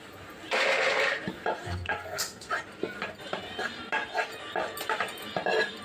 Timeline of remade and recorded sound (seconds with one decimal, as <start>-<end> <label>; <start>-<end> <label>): 0.0-1.6 recorded; 1.6-2.5 remade; 2.5-5.8 recorded